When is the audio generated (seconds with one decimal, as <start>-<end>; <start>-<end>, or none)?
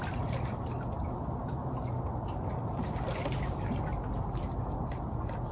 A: none